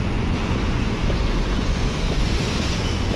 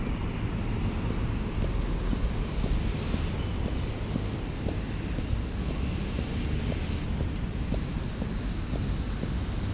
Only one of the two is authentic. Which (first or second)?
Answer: second